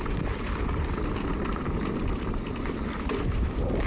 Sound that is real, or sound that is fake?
real